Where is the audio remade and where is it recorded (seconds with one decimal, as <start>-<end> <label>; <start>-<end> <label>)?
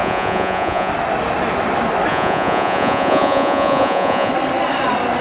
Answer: 0.0-0.9 remade; 0.9-2.1 recorded; 2.1-4.3 remade; 4.3-5.2 recorded